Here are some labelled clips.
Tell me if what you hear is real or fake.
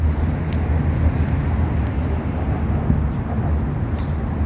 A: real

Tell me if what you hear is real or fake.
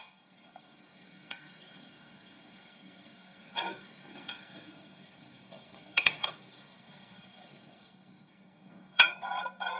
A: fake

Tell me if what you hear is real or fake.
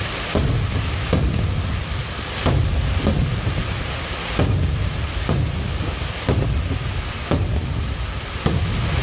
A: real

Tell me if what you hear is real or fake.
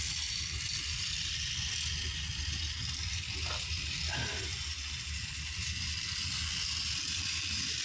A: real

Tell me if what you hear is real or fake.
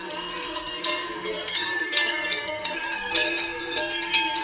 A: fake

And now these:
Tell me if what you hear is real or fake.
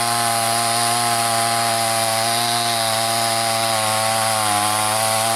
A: real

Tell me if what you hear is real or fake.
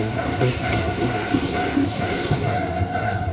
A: fake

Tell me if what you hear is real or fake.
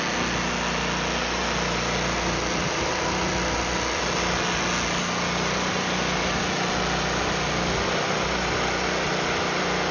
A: real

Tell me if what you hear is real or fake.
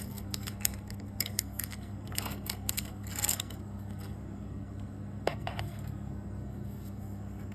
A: fake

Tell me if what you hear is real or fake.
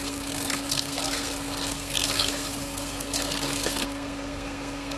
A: fake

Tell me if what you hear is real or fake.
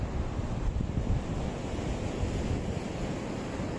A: real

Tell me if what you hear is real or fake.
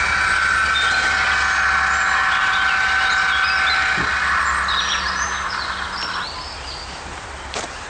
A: real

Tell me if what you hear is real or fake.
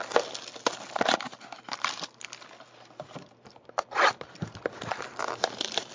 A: real